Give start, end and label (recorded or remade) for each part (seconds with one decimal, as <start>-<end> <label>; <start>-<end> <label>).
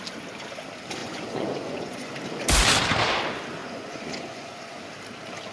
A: 0.0-1.0 recorded; 1.0-2.1 remade; 2.1-3.6 recorded; 3.6-4.8 remade; 4.8-5.5 recorded